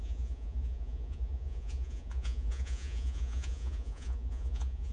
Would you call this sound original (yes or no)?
no